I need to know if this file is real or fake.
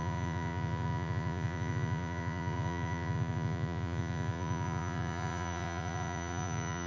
fake